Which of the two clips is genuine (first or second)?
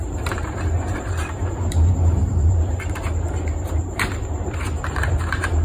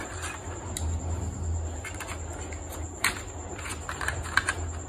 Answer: second